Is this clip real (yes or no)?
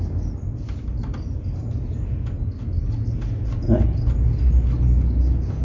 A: yes